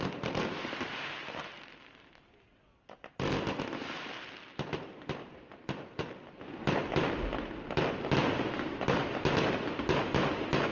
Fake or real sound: real